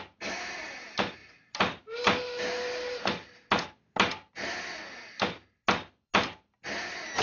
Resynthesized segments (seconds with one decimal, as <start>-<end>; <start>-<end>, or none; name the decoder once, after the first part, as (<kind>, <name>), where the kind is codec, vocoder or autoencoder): none